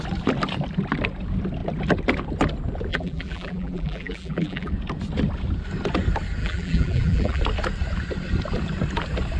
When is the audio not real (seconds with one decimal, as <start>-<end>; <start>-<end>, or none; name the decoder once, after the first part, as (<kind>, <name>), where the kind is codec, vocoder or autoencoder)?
2.9-4.7 (vocoder, BigVGAN v2); 6.4-7.4